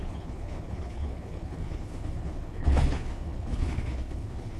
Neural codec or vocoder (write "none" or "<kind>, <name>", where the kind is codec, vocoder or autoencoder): codec, HILCodec